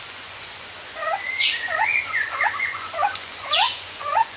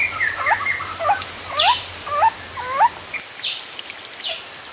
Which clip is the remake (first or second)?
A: first